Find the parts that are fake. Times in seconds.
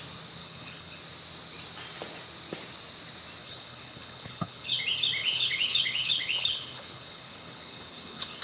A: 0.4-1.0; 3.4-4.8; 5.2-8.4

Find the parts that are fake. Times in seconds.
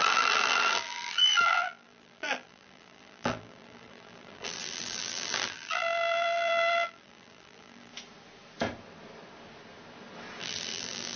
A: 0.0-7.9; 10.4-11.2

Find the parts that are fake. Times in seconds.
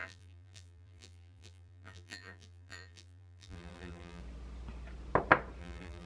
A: 0.0-4.2; 5.6-6.1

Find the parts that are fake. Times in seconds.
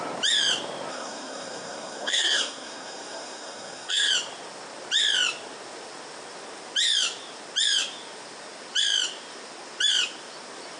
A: 0.9-4.1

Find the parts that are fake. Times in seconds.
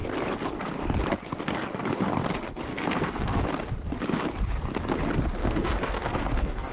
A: 2.7-3.4; 5.4-6.7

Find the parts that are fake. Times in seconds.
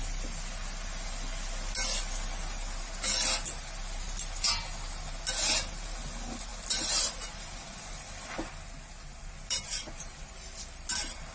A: none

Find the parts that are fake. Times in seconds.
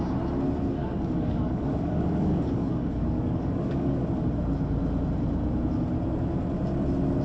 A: 0.8-4.0